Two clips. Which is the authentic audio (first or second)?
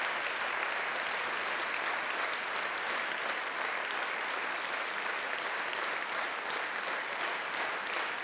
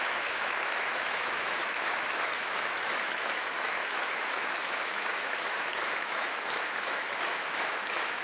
first